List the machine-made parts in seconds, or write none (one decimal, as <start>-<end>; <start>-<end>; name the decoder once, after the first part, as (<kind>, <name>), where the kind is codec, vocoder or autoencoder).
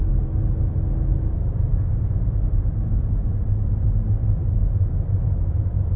0.0-6.0 (vocoder, BigVGAN v2)